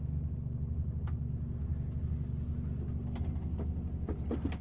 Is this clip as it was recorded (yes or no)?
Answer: yes